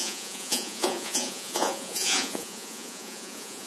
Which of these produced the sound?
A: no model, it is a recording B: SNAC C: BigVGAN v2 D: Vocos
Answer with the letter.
D